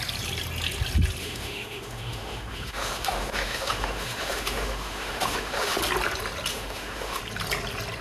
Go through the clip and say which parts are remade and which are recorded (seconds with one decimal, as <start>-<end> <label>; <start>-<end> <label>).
0.0-1.2 recorded; 1.2-5.8 remade; 5.8-6.5 recorded; 6.5-7.2 remade; 7.2-8.0 recorded